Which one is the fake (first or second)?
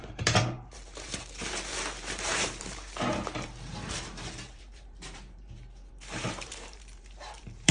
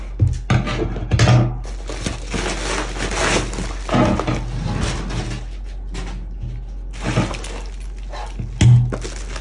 first